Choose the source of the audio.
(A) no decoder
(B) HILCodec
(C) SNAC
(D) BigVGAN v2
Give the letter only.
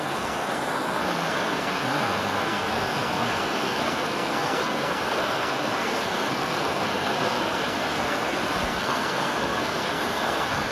C